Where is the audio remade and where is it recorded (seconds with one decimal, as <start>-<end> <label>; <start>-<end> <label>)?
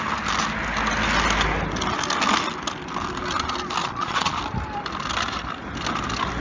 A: 0.0-3.8 recorded; 3.8-4.4 remade; 4.4-6.4 recorded